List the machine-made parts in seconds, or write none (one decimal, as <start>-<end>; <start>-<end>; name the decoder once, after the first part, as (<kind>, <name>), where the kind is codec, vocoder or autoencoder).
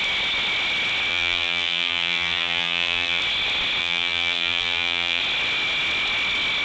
1.1-3.2 (vocoder, BigVGAN v2); 3.8-5.2